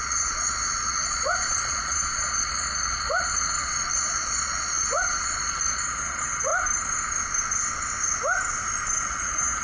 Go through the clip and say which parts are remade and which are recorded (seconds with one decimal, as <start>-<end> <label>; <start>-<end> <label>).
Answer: 0.0-6.5 remade; 6.5-9.1 recorded; 9.1-9.6 remade